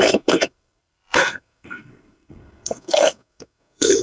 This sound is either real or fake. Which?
fake